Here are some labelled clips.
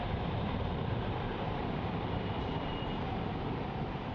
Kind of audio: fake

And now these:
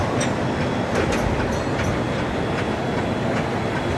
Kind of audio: real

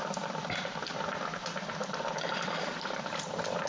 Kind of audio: fake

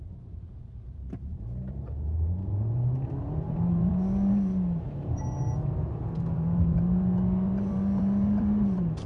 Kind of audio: fake